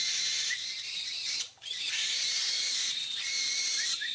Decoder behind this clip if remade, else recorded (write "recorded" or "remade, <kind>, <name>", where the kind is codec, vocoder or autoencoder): remade, vocoder, BigVGAN v2